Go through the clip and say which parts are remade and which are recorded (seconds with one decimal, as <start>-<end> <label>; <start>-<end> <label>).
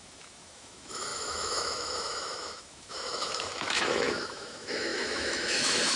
0.0-6.0 remade